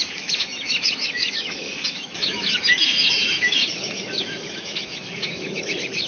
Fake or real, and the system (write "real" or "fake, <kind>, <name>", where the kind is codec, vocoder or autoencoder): fake, autoencoder, DAC-VAE